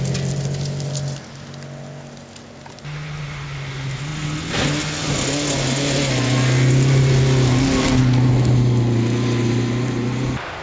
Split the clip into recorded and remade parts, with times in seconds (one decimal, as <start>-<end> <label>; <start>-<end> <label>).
0.0-10.6 recorded